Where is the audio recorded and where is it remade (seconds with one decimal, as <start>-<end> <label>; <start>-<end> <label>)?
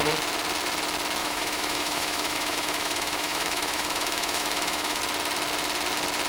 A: 0.0-1.2 recorded; 1.2-5.0 remade; 5.0-6.3 recorded